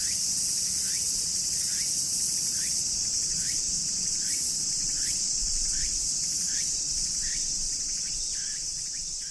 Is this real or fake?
fake